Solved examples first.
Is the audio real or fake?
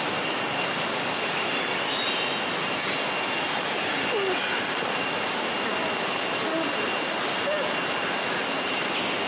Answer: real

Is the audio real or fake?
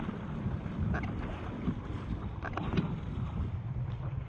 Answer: real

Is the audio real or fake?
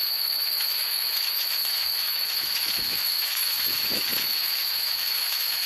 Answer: fake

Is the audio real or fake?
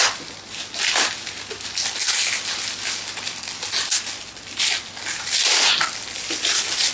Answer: real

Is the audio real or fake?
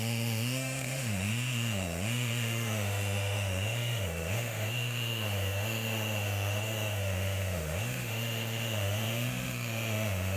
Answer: fake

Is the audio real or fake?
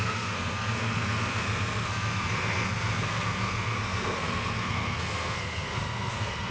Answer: fake